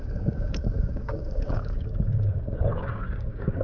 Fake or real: fake